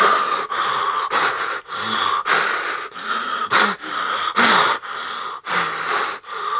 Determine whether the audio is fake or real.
real